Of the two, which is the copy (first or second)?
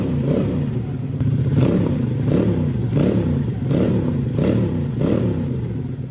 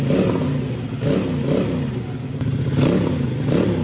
first